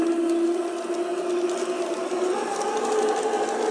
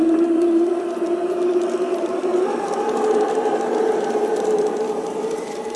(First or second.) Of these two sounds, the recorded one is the first